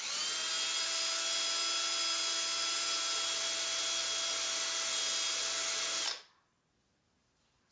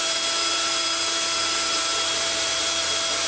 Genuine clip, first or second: first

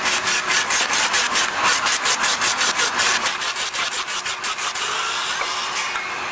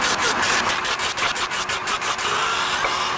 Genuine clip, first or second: second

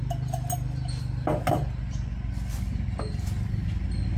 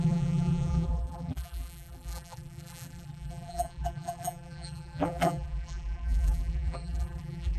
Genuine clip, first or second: first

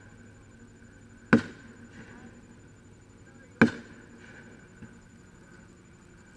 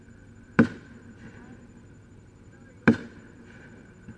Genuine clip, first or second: first